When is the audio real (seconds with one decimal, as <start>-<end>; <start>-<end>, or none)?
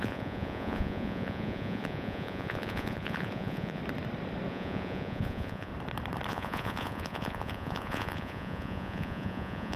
3.8-4.5; 5.7-6.3